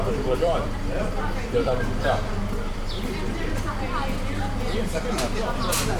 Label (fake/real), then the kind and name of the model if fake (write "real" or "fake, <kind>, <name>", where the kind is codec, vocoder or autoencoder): fake, vocoder, BigVGAN v2